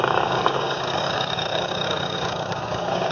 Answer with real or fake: fake